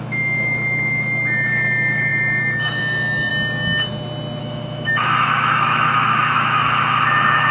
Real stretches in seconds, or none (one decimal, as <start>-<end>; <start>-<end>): 3.3-4.4